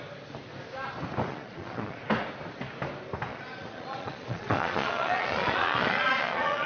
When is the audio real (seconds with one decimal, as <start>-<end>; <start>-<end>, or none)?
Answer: 0.0-1.3; 2.0-3.3